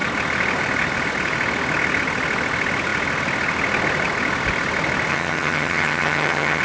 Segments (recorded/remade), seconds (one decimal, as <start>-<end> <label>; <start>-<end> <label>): 0.0-5.1 recorded; 5.1-6.6 remade